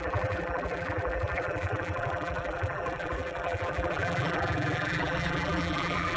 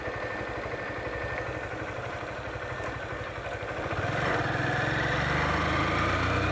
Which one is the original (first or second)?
second